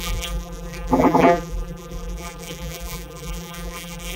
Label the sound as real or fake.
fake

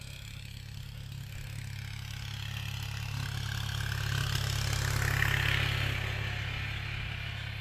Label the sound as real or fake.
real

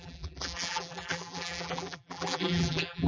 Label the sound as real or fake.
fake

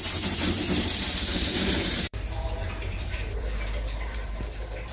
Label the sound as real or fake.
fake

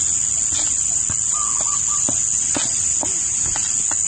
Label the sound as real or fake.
real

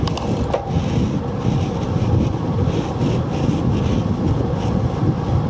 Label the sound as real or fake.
real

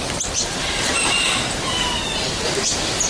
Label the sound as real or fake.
real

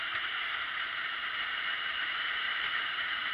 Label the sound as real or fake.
fake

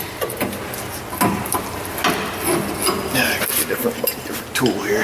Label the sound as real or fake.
real